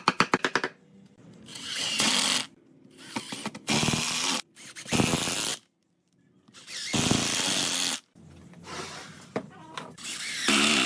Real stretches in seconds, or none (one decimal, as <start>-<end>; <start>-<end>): 0.0-1.5; 2.1-10.9